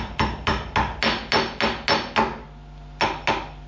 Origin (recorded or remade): recorded